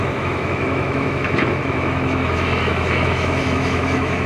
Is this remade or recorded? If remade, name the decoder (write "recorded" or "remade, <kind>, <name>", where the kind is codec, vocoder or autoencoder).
remade, autoencoder, DAC-VAE